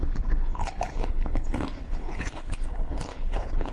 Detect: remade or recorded remade